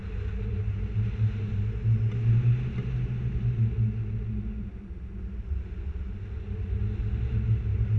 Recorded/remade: recorded